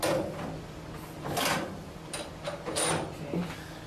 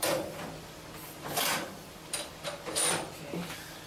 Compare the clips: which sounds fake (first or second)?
second